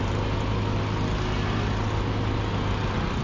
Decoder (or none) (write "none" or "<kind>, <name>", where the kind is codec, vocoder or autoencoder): none